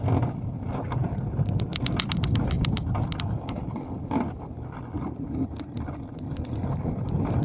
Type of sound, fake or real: real